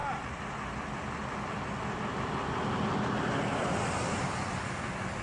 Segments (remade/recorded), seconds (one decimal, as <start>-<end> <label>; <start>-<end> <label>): 0.0-5.2 recorded